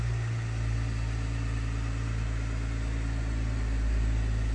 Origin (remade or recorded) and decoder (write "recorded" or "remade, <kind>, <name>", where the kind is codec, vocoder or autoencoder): recorded